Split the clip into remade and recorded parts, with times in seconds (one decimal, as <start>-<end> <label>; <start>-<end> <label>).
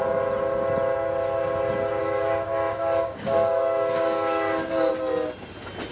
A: 0.0-2.0 recorded; 2.0-4.9 remade; 4.9-5.9 recorded